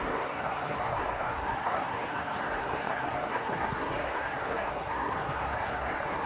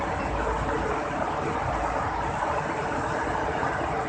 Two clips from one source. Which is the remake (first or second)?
first